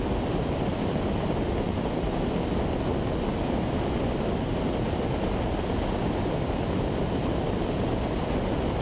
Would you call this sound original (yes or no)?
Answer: yes